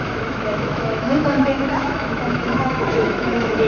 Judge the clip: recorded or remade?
remade